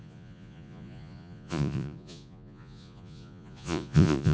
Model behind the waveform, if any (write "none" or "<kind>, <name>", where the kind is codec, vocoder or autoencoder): vocoder, Vocos